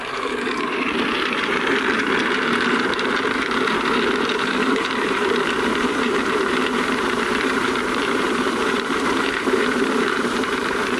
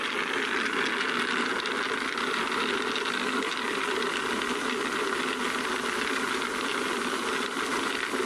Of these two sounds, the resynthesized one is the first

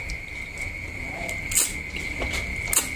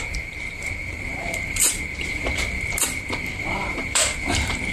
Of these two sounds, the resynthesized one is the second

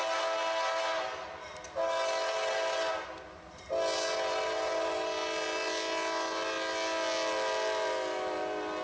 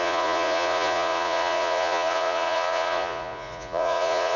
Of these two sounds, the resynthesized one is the second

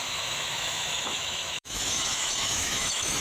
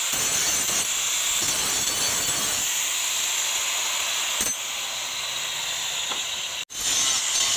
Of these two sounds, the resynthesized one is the first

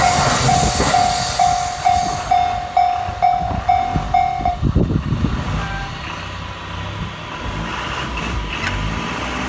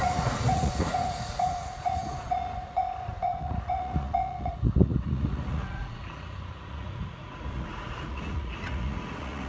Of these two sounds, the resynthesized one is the second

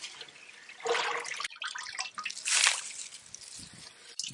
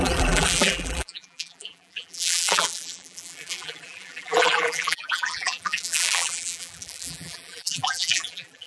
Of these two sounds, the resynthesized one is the second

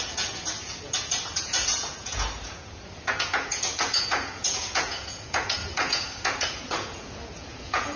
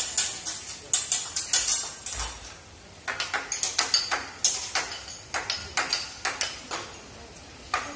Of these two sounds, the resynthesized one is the first